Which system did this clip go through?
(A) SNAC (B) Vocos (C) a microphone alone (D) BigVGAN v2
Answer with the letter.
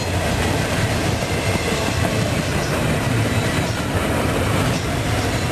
D